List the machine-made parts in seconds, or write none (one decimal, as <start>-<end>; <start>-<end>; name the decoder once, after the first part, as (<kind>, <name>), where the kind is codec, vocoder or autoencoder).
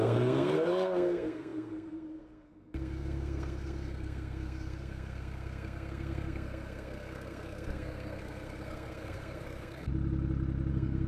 0.0-9.9 (codec, SNAC); 10.7-11.1